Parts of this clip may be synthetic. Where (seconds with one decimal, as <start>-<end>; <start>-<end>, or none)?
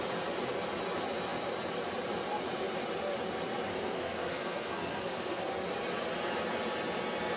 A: 3.7-5.5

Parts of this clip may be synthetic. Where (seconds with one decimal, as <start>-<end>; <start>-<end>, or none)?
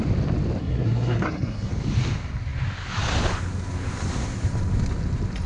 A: 0.6-1.7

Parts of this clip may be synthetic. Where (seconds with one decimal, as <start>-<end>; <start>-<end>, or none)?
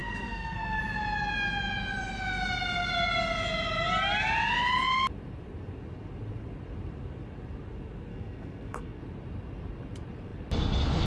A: 0.0-0.8; 8.1-9.0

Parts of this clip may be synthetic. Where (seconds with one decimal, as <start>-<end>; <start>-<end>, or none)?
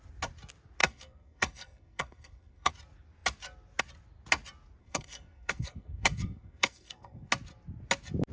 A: 0.8-2.7; 4.8-7.3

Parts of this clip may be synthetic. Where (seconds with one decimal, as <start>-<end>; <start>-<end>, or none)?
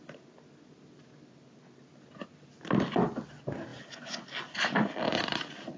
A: none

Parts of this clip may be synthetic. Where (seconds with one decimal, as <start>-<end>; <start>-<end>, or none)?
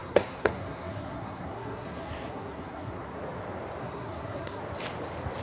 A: 0.0-3.2; 3.8-4.6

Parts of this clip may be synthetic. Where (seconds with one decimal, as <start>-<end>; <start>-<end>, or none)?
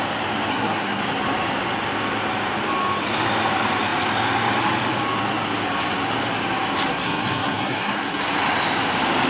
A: 0.5-1.0; 6.9-8.2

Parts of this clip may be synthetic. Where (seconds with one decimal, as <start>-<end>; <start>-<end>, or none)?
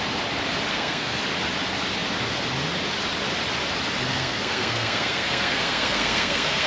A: 0.7-1.2; 4.1-6.7